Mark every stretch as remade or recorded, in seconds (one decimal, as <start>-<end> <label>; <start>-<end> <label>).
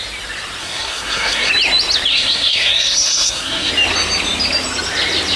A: 0.0-0.6 recorded; 0.6-1.5 remade; 1.5-2.1 recorded; 2.1-3.7 remade; 3.7-5.4 recorded